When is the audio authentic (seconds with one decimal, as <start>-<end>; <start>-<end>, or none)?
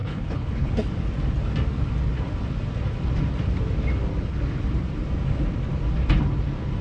0.7-6.8